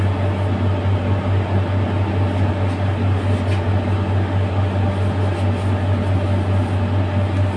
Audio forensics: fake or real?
real